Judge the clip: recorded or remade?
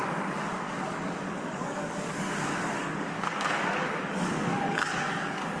remade